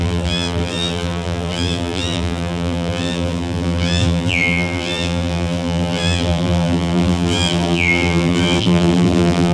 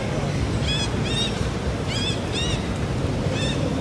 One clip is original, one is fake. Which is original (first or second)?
second